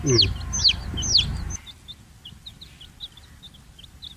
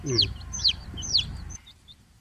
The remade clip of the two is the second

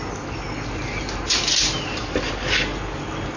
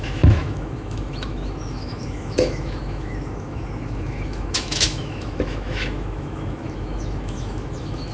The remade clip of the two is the second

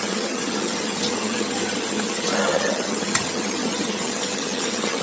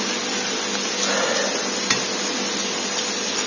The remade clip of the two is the first